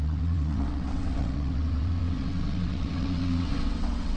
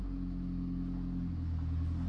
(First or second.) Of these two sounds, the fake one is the first